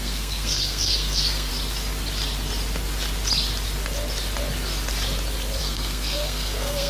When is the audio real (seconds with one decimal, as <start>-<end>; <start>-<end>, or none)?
1.5-5.6